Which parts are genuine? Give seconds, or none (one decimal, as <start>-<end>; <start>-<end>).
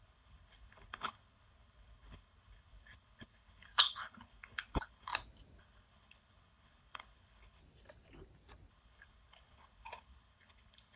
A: 5.1-5.6; 7.6-8.7